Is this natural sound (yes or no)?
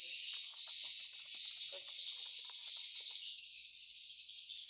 no